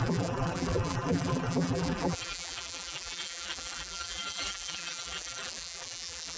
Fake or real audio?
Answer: fake